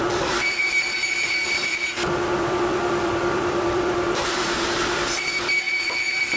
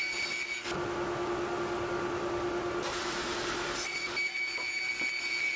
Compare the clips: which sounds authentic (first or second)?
second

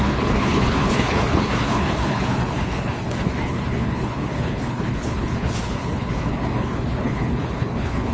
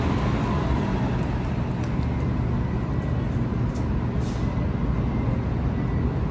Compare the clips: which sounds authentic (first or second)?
second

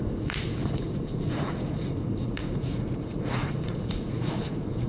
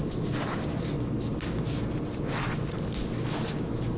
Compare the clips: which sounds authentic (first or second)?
second